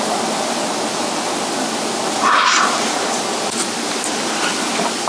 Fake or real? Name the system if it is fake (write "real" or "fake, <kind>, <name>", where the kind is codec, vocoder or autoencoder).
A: real